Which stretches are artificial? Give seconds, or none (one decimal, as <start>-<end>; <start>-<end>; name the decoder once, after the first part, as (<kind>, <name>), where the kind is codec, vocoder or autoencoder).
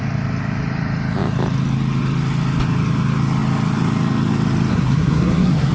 4.7-5.7 (codec, SNAC)